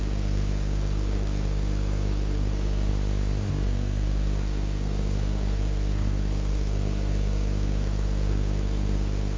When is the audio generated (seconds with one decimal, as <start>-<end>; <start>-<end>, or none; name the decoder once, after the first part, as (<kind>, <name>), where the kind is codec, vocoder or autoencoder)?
0.0-2.9 (codec, SNAC); 3.5-9.4